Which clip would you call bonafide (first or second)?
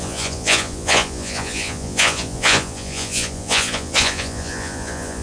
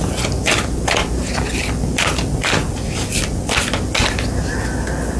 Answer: second